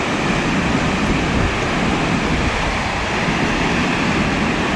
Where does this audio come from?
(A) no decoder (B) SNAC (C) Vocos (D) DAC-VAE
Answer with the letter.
A